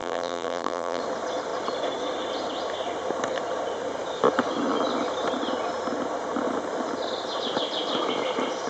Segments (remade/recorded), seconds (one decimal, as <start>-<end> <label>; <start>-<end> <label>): 0.0-1.0 remade; 1.0-8.7 recorded